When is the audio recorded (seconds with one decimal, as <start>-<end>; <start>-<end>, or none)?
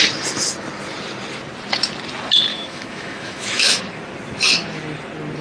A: 0.0-2.5; 3.8-5.4